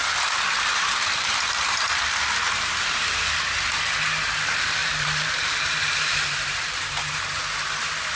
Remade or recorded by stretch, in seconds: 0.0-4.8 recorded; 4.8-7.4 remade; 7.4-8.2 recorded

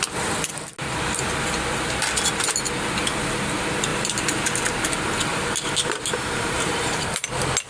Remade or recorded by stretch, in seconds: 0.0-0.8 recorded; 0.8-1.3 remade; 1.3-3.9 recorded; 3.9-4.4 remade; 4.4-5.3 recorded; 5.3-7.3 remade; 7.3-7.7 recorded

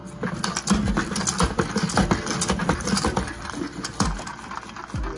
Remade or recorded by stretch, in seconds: 0.0-2.6 recorded; 2.6-3.4 remade; 3.4-5.2 recorded

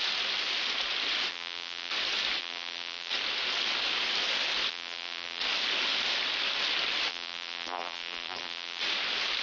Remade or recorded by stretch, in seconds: 0.0-1.3 recorded; 1.3-1.9 remade; 1.9-2.4 recorded; 2.4-3.1 remade; 3.1-4.7 recorded; 4.7-5.4 remade; 5.4-7.1 recorded; 7.1-8.8 remade; 8.8-9.4 recorded

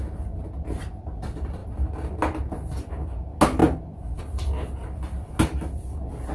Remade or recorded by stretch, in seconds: 0.0-6.3 recorded

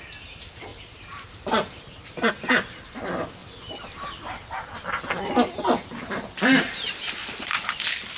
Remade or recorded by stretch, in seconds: 0.0-0.7 recorded; 0.7-2.3 remade; 2.3-8.2 recorded